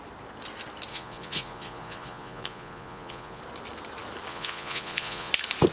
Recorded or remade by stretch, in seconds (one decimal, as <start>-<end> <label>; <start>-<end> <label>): 0.0-0.9 recorded; 0.9-3.4 remade; 3.4-4.3 recorded; 4.3-5.3 remade; 5.3-5.7 recorded